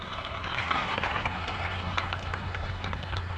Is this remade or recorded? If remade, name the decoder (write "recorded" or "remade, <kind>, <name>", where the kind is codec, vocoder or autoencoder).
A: remade, codec, SNAC